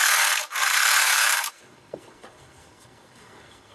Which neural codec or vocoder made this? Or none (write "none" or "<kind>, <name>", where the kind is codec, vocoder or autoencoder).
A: codec, SNAC